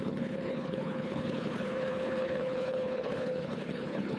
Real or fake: fake